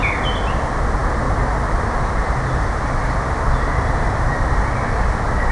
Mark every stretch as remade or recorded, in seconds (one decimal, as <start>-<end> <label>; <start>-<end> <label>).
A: 0.0-5.5 recorded